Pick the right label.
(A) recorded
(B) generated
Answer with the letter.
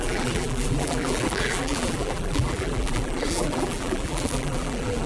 B